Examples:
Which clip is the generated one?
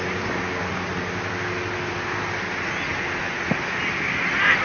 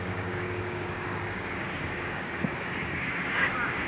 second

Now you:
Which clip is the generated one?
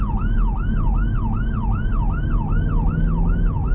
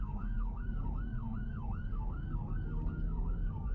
second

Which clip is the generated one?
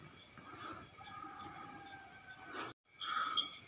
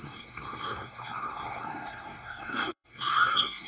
second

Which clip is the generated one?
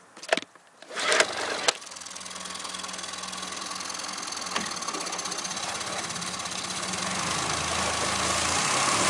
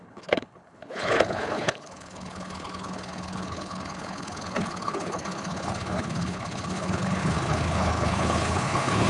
second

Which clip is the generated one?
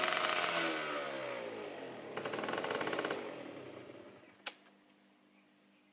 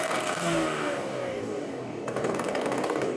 second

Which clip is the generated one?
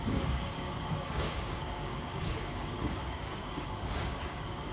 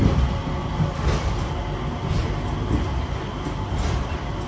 first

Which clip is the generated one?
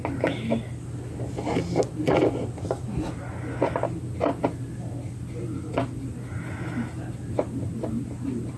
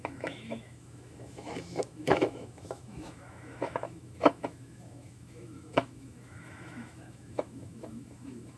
second